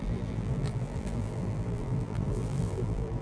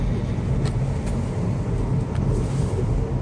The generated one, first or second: first